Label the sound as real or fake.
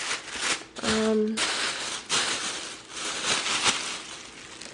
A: real